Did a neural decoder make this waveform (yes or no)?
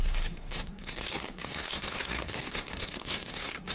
yes